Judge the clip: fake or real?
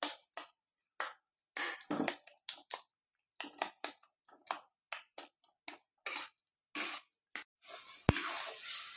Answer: real